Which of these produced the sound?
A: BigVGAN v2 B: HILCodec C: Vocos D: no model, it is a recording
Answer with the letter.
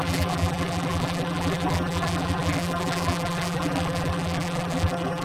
A